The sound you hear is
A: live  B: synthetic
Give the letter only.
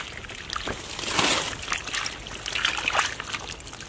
A